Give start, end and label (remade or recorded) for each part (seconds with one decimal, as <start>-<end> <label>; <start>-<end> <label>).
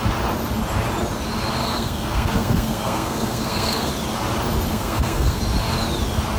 0.0-1.6 recorded; 1.6-3.9 remade; 3.9-4.7 recorded; 4.7-5.4 remade; 5.4-6.4 recorded